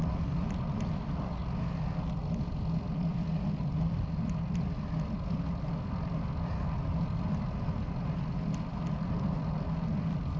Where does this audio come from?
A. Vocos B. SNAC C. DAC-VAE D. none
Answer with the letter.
D